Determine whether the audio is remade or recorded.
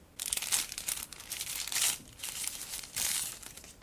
recorded